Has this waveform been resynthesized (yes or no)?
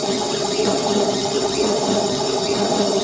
yes